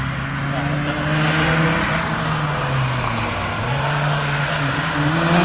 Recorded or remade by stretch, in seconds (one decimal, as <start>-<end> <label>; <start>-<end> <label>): 0.0-5.4 recorded